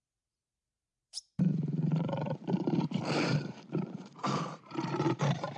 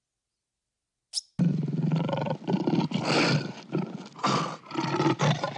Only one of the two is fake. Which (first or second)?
first